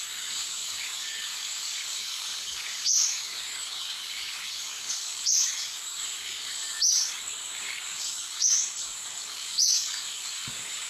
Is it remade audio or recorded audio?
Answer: remade